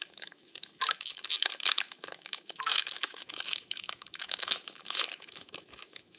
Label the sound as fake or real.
fake